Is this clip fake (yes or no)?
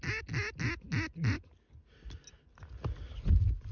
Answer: no